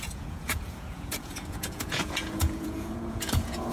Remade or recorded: remade